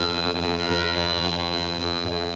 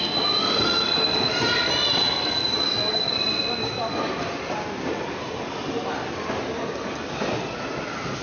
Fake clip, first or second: first